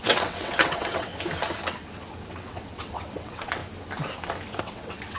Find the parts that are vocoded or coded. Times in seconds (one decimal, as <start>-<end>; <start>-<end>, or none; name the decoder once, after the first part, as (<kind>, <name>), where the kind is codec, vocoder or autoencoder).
0.0-1.1 (vocoder, WaveNeXt); 2.3-3.6; 4.6-5.2